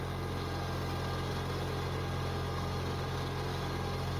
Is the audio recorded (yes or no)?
yes